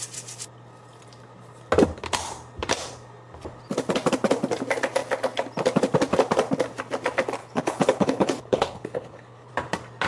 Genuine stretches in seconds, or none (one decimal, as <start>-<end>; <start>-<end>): 0.0-7.4; 9.5-10.1